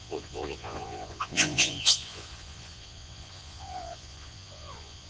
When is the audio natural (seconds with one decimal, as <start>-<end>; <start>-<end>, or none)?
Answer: none